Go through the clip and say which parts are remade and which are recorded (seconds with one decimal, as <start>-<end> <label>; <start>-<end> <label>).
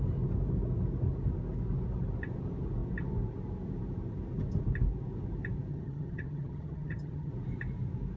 0.0-5.7 recorded; 5.7-7.3 remade; 7.3-8.2 recorded